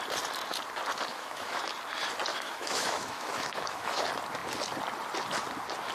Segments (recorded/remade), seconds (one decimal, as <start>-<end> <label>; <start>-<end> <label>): 0.0-1.1 recorded; 1.1-1.6 remade; 1.6-2.3 recorded; 2.3-4.0 remade; 4.0-5.9 recorded